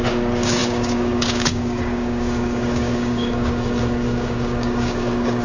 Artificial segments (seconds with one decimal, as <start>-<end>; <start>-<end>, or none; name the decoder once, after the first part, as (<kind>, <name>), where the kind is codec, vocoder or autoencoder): 0.0-5.4 (codec, DAC)